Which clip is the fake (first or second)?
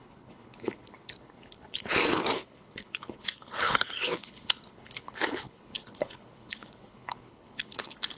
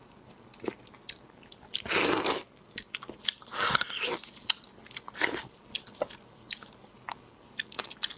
first